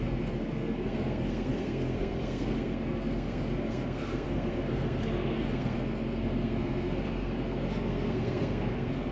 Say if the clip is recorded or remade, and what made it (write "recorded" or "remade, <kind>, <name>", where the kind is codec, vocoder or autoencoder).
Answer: remade, codec, SNAC